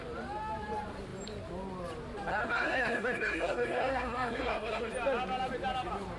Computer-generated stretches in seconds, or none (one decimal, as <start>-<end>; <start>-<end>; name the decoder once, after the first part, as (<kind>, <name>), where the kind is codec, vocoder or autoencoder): 2.3-4.9 (codec, SNAC)